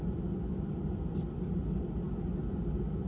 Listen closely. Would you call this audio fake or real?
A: real